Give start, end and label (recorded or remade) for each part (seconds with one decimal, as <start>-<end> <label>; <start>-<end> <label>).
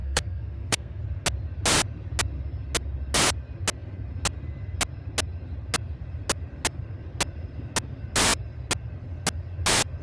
0.0-1.0 remade; 1.0-10.0 recorded